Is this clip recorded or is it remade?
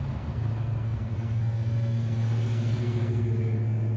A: remade